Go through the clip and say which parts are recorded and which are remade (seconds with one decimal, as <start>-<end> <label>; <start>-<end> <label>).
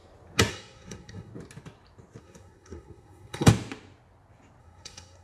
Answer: 0.0-0.5 recorded; 0.5-1.3 remade; 1.3-2.2 recorded; 2.2-3.5 remade; 3.5-4.6 recorded; 4.6-5.2 remade